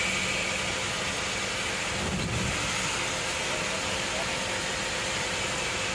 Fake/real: real